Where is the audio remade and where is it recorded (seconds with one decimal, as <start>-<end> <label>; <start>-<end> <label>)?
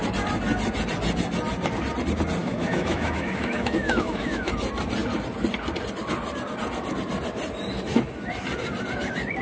0.0-2.4 recorded; 2.4-4.5 remade; 4.5-9.4 recorded